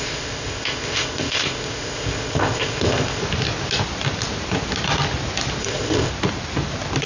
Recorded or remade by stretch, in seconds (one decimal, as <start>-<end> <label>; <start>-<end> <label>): 0.0-3.2 remade; 3.2-5.6 recorded; 5.6-6.1 remade; 6.1-7.1 recorded